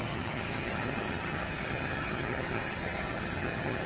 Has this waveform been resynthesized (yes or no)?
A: yes